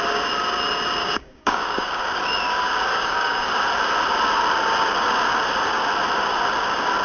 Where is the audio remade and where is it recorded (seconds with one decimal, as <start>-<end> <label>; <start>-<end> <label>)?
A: 0.0-1.0 recorded; 1.0-2.0 remade; 2.0-2.9 recorded; 2.9-3.5 remade; 3.5-7.0 recorded